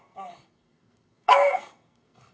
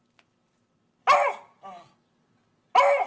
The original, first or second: second